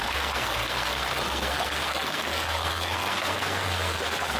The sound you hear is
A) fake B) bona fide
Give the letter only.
A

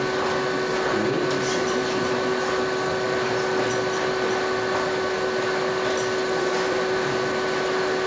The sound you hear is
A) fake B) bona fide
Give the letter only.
B